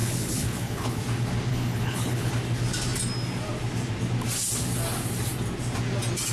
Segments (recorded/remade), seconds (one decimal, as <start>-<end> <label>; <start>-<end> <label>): 0.0-1.0 remade; 1.0-1.5 recorded; 1.5-2.3 remade; 2.3-6.3 recorded